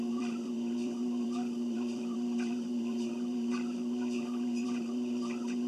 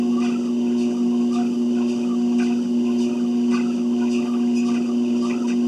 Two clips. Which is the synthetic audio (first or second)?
first